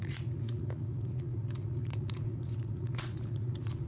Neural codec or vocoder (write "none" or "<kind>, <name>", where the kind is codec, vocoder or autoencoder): vocoder, Vocos